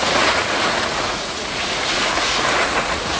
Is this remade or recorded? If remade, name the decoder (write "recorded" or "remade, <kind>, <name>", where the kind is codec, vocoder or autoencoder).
remade, vocoder, Vocos